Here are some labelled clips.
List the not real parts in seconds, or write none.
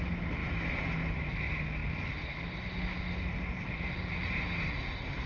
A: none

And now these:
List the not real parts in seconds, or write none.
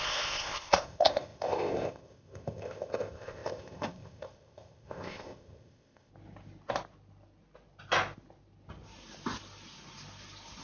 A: 0.0-6.1 (codec, ZipCodec)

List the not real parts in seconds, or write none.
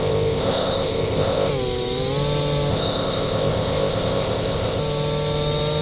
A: 0.0-1.5 (codec, ZipCodec); 2.7-4.8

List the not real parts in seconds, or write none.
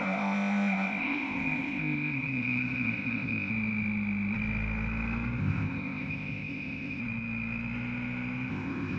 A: 0.0-3.5 (codec, ZipCodec); 5.4-7.0; 8.5-9.0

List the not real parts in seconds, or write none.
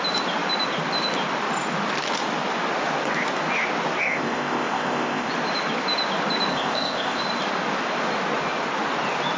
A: 4.0-5.3 (codec, ZipCodec); 6.5-7.2